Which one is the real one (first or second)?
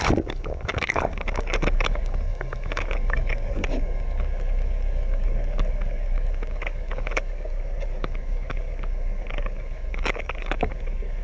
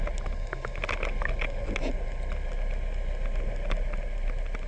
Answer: second